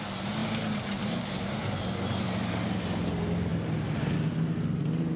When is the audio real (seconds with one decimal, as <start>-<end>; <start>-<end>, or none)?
0.0-5.2